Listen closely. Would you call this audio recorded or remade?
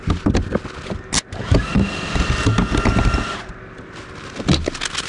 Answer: recorded